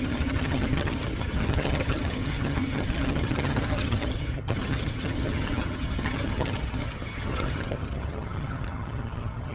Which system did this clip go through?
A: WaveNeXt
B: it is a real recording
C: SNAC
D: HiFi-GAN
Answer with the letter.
D